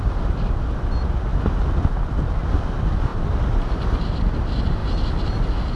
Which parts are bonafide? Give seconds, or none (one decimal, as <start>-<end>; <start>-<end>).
0.0-5.8